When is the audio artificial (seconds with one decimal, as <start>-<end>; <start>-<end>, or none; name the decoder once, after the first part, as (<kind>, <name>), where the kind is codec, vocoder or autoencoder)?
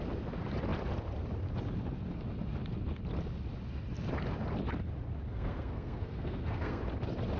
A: 5.3-6.8 (codec, SNAC)